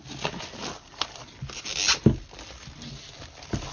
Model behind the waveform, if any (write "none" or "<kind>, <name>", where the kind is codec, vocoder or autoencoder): none